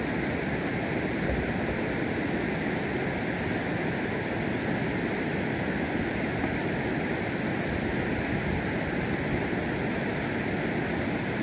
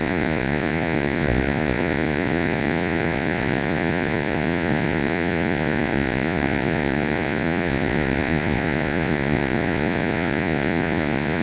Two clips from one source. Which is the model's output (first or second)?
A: second